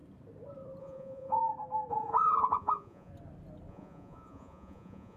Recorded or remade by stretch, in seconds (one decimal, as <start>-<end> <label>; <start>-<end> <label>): 0.0-0.8 recorded; 0.8-1.4 remade; 1.4-1.9 recorded; 1.9-3.1 remade; 3.1-3.7 recorded; 3.7-5.2 remade